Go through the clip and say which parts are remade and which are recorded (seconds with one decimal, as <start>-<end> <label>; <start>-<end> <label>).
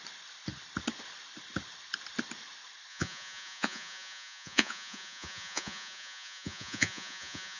0.0-2.9 recorded; 2.9-7.6 remade